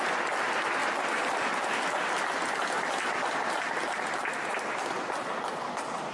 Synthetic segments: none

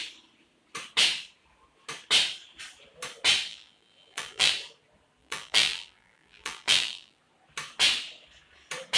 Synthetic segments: 3.5-4.5 (vocoder, BigVGAN v2); 5.2-7.2